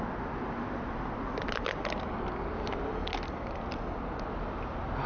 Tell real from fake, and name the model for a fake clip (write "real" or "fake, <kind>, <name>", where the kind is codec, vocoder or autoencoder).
real